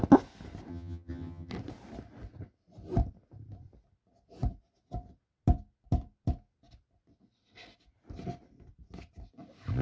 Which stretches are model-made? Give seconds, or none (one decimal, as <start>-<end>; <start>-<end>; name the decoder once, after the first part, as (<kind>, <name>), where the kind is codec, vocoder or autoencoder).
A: 0.7-1.5 (vocoder, HiFi-GAN)